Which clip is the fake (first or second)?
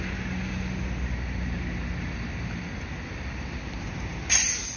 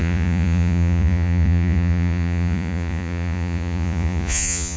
second